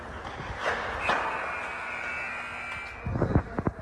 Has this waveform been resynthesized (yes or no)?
no